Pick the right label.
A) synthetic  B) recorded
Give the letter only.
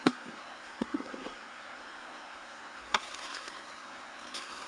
A